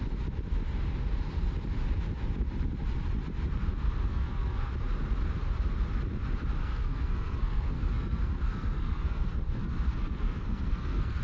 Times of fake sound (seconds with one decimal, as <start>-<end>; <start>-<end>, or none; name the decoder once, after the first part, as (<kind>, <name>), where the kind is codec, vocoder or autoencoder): 4.1-4.7 (codec, SNAC); 6.6-11.2